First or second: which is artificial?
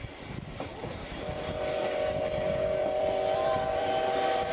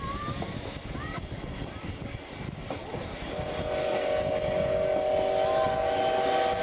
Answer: first